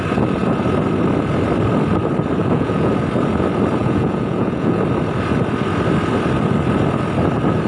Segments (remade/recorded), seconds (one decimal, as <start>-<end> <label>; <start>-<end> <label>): 0.0-2.4 recorded; 2.4-2.9 remade; 2.9-3.8 recorded; 3.8-4.8 remade; 4.8-7.7 recorded

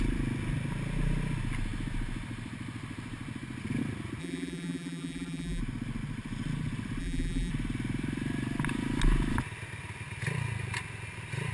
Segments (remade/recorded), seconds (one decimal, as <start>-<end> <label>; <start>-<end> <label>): 0.0-4.2 recorded; 4.2-5.6 remade; 5.6-7.0 recorded; 7.0-7.5 remade; 7.5-11.5 recorded